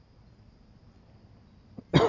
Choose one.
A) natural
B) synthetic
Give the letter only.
A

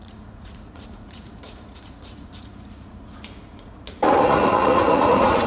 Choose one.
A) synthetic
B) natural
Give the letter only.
A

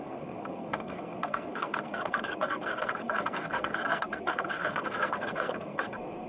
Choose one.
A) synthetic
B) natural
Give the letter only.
A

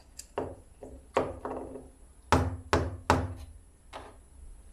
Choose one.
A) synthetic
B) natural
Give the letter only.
B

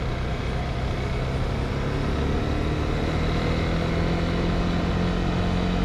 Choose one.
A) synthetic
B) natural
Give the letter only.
B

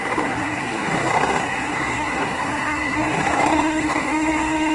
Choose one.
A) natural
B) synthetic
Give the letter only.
B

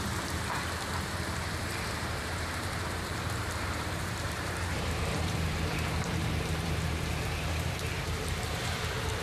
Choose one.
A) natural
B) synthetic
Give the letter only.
B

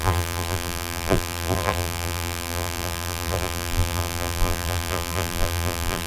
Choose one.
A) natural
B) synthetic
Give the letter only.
B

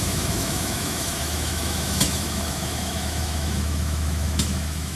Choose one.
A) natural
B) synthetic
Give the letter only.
B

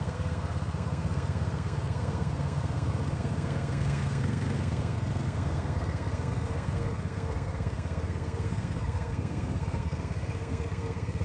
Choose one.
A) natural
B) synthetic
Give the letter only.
B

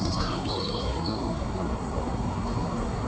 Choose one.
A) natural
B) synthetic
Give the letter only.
B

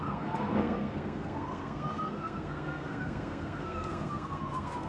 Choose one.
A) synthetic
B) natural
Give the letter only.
A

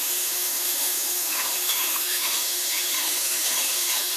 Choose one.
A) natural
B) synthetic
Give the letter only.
B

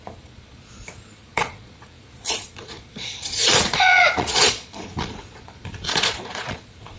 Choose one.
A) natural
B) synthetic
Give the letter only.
B